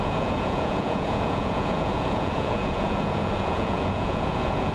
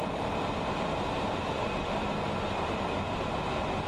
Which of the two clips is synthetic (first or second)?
first